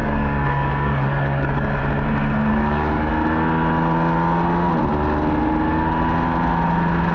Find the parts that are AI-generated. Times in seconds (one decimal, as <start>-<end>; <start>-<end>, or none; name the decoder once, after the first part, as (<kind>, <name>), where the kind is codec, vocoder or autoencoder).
0.0-1.8 (codec, DAC); 2.5-3.1